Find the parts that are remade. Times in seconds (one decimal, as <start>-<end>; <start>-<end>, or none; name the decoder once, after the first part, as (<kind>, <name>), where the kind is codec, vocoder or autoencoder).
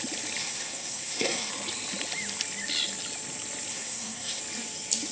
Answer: 0.4-1.5 (codec, SNAC); 3.7-4.4